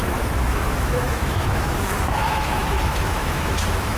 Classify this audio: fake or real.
fake